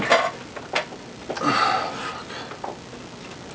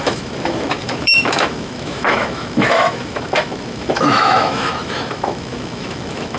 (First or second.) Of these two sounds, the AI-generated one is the second